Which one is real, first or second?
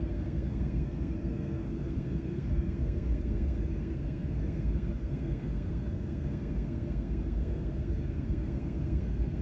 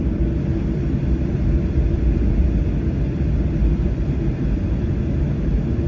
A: second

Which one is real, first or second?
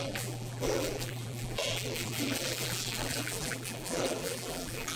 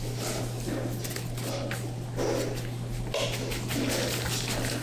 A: second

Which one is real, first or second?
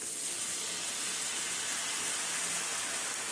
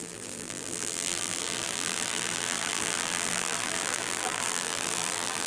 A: first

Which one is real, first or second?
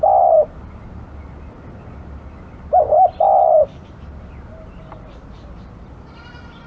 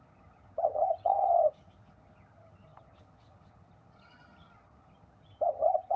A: first